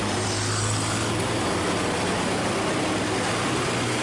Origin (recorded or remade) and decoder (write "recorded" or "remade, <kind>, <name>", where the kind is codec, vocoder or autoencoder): recorded